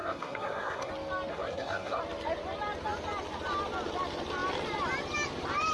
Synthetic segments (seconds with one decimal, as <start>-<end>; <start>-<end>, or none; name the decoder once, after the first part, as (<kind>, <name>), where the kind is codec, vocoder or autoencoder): 0.0-0.9 (codec, SNAC); 1.3-2.0